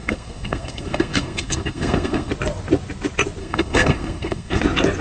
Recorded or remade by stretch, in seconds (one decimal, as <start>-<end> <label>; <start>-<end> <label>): 0.0-2.3 remade; 2.3-3.4 recorded; 3.4-4.6 remade; 4.6-5.0 recorded